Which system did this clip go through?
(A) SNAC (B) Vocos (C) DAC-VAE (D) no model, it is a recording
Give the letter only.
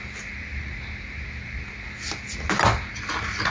D